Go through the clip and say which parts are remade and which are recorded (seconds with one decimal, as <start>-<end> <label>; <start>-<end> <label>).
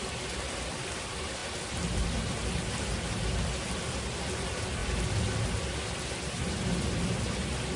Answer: 0.0-7.8 recorded